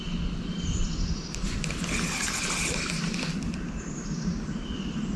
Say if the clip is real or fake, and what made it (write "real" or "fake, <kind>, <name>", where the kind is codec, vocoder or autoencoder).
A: real